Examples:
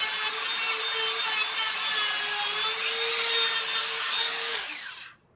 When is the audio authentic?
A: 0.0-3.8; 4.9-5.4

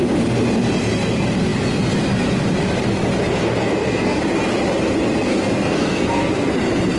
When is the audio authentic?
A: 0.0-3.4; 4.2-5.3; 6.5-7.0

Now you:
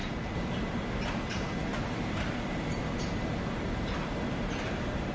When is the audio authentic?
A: 0.8-1.7